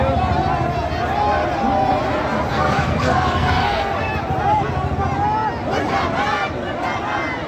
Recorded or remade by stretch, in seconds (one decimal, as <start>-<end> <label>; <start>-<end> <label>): 0.0-2.5 recorded; 2.5-4.1 remade; 4.1-7.5 recorded